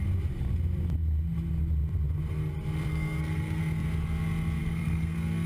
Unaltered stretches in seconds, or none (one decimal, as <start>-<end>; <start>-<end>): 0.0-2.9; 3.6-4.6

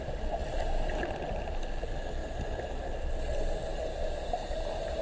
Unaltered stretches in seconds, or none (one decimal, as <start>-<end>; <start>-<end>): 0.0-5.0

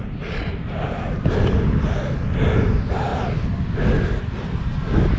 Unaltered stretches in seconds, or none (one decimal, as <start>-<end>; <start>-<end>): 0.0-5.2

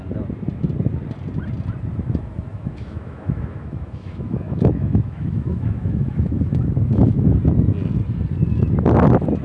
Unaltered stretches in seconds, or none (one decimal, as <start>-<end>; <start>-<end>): 0.0-2.5; 7.3-9.4